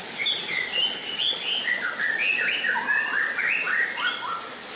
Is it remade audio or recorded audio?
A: recorded